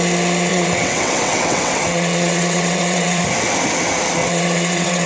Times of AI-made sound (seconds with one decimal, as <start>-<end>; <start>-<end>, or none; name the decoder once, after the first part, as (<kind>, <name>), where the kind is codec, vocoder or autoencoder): 0.5-3.2 (vocoder, WaveNeXt); 4.2-5.1